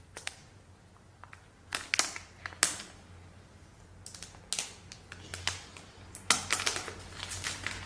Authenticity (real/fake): real